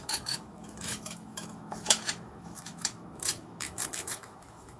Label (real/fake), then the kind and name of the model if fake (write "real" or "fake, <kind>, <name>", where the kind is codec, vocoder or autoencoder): fake, autoencoder, DAC-VAE